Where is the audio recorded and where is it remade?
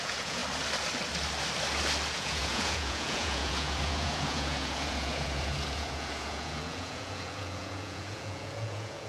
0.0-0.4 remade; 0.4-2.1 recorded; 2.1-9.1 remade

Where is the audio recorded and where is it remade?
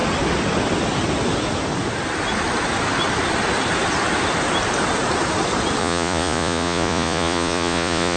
0.0-5.8 recorded; 5.8-8.2 remade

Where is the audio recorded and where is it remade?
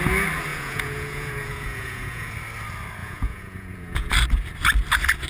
0.0-0.5 recorded; 0.5-2.3 remade; 2.3-3.0 recorded; 3.0-4.1 remade; 4.1-5.3 recorded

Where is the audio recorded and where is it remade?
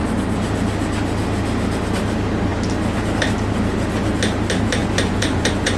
0.0-4.8 recorded; 4.8-5.8 remade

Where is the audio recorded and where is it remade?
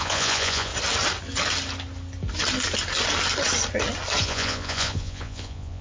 0.0-0.7 remade; 0.7-4.2 recorded; 4.2-5.8 remade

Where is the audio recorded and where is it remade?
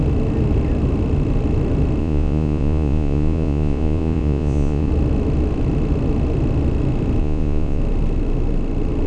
0.0-2.0 recorded; 2.0-4.9 remade; 4.9-7.2 recorded; 7.2-7.8 remade; 7.8-9.1 recorded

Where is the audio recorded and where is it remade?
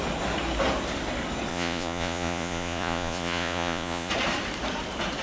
0.0-1.5 recorded; 1.5-4.1 remade; 4.1-5.2 recorded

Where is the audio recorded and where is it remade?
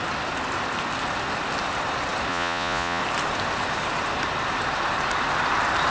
0.0-2.3 recorded; 2.3-3.0 remade; 3.0-5.9 recorded